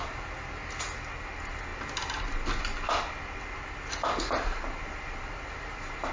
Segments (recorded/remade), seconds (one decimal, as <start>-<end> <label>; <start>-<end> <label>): 0.0-6.1 recorded